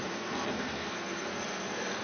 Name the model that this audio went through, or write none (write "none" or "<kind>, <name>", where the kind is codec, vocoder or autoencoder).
codec, SNAC